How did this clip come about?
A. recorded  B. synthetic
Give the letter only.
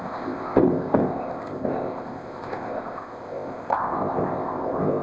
B